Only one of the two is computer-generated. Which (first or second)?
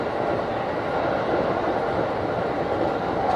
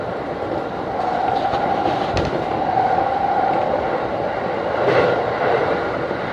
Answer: second